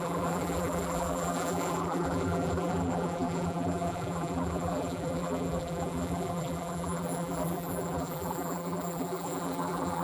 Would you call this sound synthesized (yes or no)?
yes